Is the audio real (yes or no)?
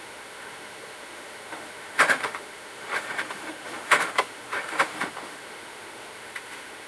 no